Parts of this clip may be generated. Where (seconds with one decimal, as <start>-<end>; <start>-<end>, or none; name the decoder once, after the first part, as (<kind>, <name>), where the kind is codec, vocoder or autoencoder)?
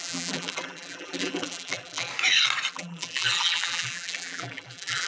0.0-2.1 (vocoder, BigVGAN v2); 2.7-5.1